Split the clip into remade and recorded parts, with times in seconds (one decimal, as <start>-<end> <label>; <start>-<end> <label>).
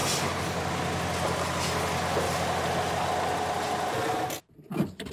0.0-5.1 recorded